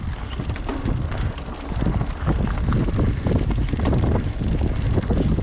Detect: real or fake real